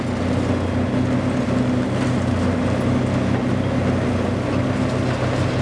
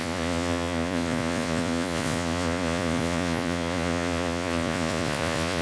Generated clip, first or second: second